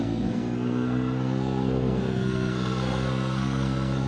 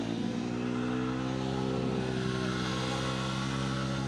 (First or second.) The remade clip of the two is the first